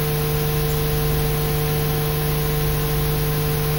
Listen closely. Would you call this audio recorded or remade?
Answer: recorded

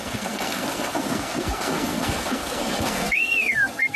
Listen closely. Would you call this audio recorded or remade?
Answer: remade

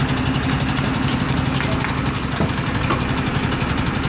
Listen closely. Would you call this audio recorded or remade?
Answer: recorded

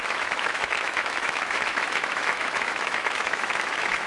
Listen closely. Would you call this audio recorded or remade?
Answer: remade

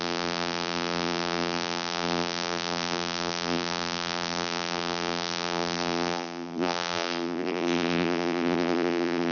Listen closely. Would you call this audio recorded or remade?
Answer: remade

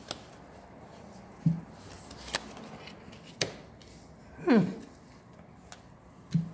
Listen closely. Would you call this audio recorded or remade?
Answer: recorded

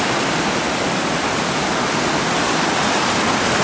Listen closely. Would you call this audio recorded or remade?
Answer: recorded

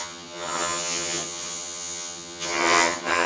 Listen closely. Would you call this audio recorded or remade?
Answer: remade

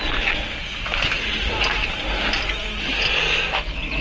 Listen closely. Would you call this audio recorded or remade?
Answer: recorded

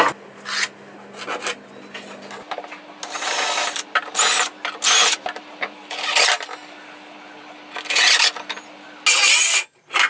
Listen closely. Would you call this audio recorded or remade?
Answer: recorded